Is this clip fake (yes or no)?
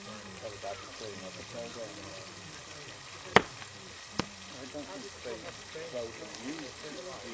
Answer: no